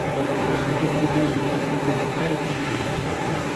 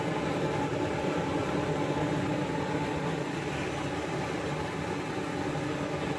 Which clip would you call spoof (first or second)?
first